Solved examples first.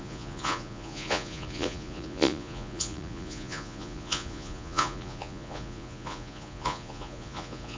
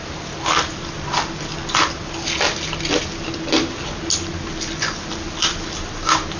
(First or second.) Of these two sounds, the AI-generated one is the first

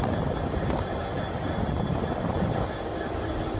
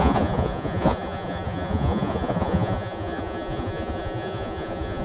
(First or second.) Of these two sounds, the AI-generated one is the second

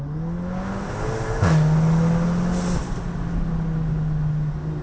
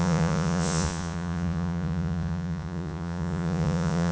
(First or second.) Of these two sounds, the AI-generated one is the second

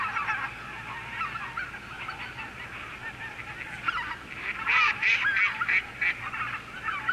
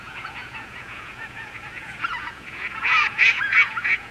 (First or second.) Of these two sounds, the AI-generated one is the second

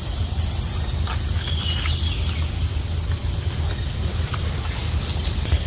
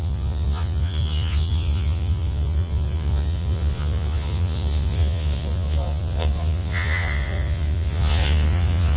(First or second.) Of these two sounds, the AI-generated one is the second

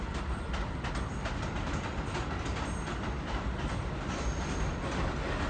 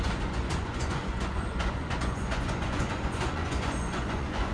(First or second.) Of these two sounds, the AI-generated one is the second